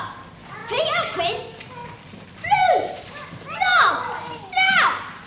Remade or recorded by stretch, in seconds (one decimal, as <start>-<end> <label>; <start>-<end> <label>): 0.0-0.6 recorded; 0.6-1.2 remade; 1.2-1.8 recorded; 1.8-5.3 remade